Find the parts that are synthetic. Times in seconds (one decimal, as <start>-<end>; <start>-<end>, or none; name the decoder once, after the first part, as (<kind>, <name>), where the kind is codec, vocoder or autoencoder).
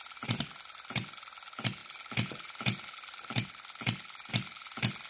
none